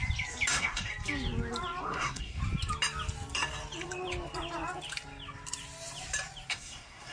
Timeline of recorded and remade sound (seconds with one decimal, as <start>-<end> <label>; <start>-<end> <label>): 0.0-0.5 recorded; 0.5-0.9 remade; 0.9-1.8 recorded; 1.8-2.4 remade; 2.4-6.5 recorded; 6.5-7.1 remade